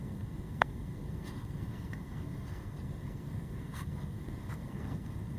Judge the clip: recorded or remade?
remade